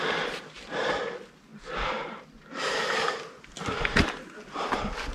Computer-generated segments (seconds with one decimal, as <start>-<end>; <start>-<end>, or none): none